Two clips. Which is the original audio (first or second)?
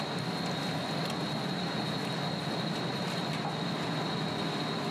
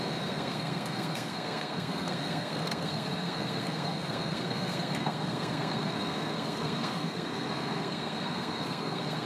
first